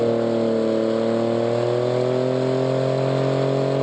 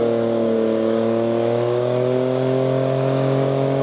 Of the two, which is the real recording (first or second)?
first